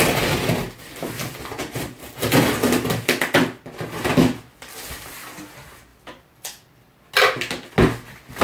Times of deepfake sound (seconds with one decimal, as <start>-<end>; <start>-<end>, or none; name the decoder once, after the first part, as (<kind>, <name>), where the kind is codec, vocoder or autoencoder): none